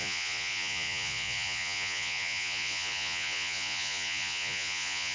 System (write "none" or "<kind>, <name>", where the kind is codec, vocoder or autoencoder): vocoder, Vocos